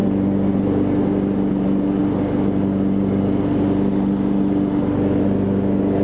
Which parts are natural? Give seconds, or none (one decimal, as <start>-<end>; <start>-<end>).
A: 0.0-6.0